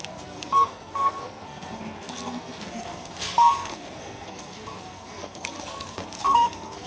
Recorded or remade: remade